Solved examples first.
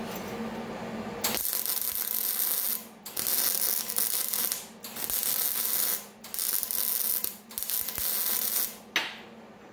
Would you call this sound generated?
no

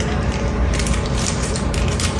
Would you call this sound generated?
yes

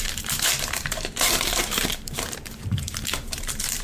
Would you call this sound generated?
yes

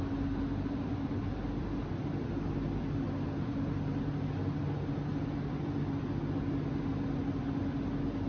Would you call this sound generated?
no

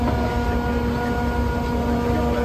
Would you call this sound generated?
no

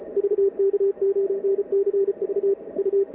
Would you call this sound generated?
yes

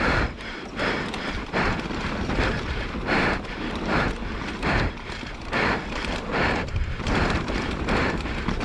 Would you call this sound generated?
yes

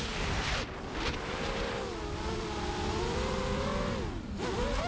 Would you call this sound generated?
yes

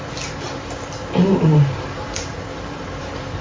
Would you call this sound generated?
yes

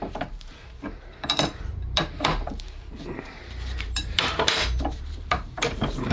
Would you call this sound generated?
yes